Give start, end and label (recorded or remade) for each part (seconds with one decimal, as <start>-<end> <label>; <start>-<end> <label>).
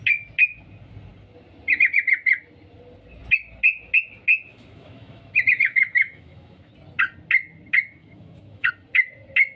0.0-4.5 recorded; 4.5-6.7 remade; 6.7-8.0 recorded; 8.0-8.7 remade; 8.7-9.6 recorded